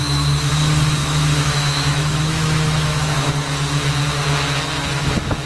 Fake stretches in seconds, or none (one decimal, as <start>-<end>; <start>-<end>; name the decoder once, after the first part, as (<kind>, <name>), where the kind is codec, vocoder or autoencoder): 0.0-0.5 (autoencoder, DAC-VAE); 1.0-3.3